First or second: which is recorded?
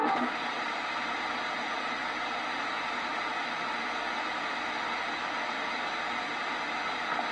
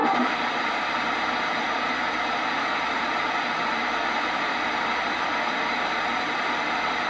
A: first